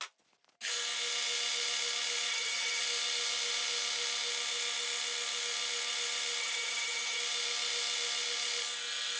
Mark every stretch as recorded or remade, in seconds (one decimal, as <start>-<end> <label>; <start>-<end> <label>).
0.0-2.3 recorded; 2.3-2.8 remade; 2.8-6.4 recorded; 6.4-7.2 remade; 7.2-9.2 recorded